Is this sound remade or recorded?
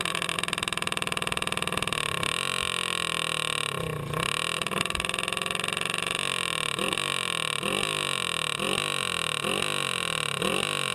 recorded